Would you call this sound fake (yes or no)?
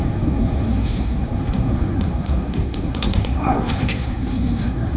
yes